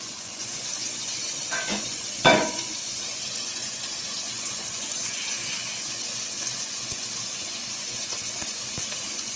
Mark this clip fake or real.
fake